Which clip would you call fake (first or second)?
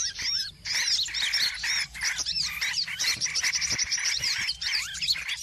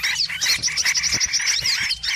first